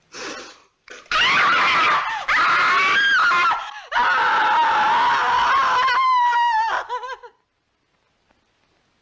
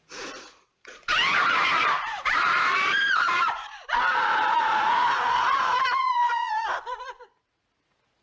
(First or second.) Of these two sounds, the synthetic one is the second